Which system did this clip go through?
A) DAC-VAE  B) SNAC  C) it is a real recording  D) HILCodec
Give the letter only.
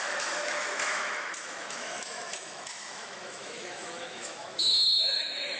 A